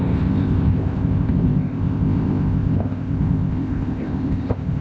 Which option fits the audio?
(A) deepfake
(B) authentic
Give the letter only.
A